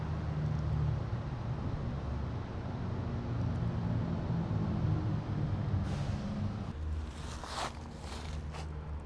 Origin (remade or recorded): recorded